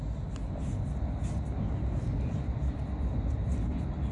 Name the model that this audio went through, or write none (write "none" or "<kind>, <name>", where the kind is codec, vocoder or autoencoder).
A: none